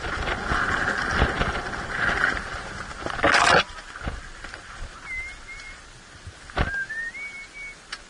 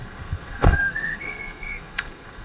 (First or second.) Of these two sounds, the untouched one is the first